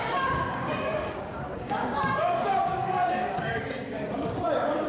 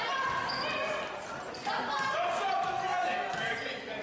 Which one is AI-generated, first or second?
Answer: first